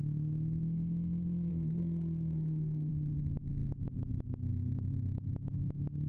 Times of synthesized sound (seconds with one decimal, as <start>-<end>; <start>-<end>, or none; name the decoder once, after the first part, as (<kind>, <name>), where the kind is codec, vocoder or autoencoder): 1.5-2.9 (codec, SNAC)